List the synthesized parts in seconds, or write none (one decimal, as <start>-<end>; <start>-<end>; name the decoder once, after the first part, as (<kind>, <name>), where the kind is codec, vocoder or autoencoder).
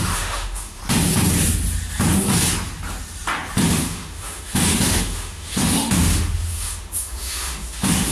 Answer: 0.0-0.8 (autoencoder, DAC-VAE); 3.7-8.1